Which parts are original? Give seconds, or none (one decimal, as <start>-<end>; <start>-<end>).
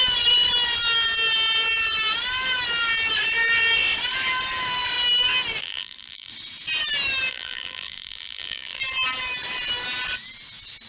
0.0-5.6; 6.3-7.3; 8.8-10.9